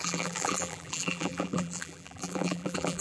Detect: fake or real fake